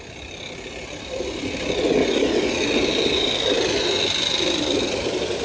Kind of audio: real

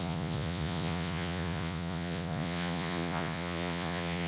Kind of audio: fake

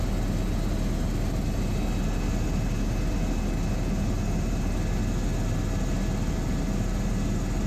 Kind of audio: real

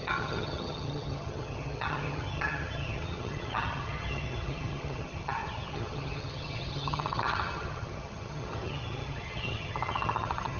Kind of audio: fake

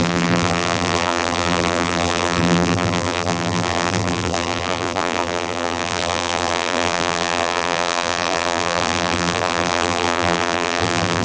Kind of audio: fake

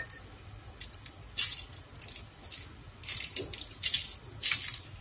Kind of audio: real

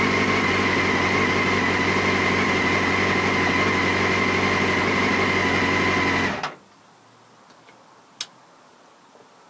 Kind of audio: real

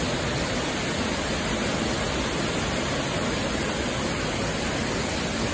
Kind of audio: real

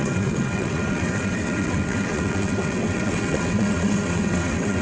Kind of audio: fake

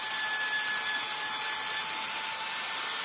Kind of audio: real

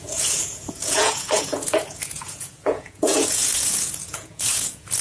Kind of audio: fake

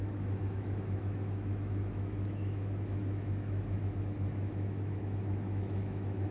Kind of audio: fake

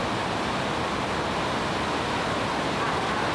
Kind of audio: real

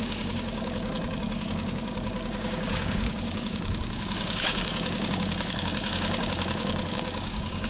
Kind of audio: fake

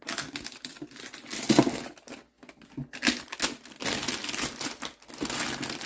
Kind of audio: real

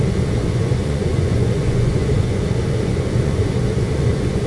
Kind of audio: fake